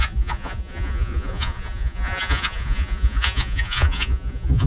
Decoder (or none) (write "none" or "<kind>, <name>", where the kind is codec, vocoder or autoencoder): vocoder, Vocos